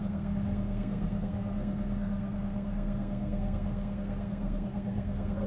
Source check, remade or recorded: remade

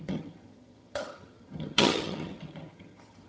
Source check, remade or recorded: remade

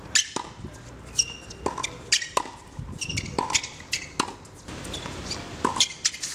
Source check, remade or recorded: recorded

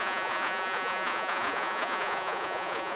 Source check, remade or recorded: remade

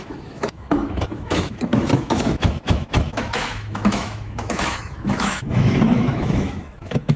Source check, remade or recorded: remade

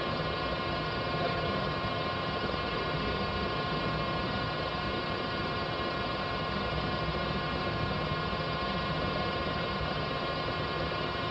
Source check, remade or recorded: remade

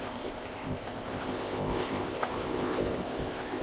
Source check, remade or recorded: remade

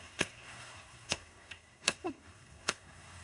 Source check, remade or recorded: remade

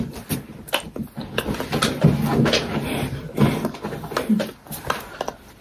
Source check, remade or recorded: recorded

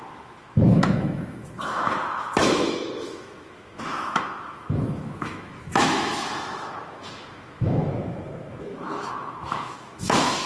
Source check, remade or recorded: remade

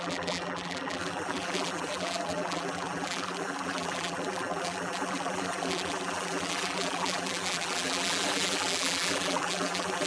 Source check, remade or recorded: remade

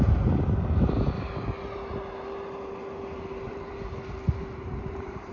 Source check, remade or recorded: recorded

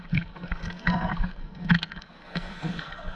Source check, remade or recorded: remade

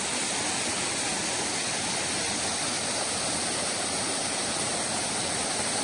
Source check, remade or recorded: recorded